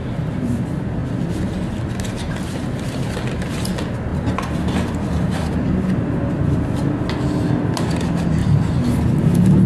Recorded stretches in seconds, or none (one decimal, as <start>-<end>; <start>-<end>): 0.0-9.7